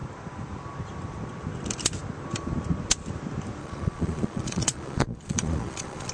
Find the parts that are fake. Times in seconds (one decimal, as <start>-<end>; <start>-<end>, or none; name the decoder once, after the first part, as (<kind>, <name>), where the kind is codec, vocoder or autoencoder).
3.6-6.1 (vocoder, Vocos)